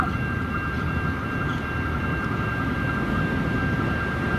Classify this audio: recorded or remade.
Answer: recorded